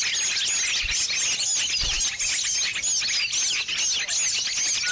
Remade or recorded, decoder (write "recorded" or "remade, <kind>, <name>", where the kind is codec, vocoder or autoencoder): recorded